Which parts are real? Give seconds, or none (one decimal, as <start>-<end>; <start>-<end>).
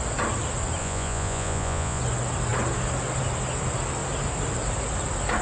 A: 0.0-0.8; 2.0-5.4